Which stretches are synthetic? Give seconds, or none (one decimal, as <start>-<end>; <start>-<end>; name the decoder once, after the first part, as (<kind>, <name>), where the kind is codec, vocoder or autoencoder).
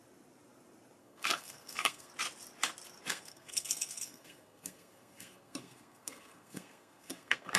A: 1.0-2.1 (codec, SNAC); 3.1-7.6